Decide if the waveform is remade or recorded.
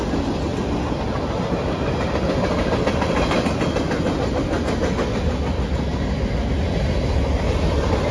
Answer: recorded